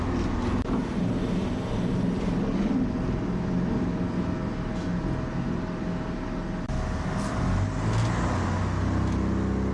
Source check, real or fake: real